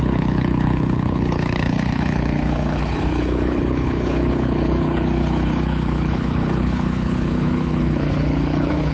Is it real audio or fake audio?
fake